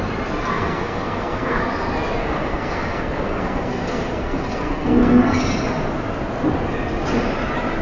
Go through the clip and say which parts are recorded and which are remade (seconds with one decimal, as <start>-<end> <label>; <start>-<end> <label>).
0.0-0.5 recorded; 0.5-1.6 remade; 1.6-2.2 recorded; 2.2-5.4 remade; 5.4-7.8 recorded